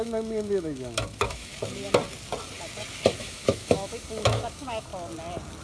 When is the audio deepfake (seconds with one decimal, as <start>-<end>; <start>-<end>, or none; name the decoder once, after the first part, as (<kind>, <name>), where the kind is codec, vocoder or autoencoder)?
0.0-1.5 (autoencoder, DAC-VAE); 3.2-4.9